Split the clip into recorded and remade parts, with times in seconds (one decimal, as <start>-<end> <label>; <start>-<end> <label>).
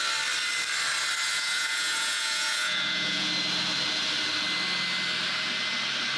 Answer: 0.0-1.3 recorded; 1.3-3.3 remade; 3.3-6.2 recorded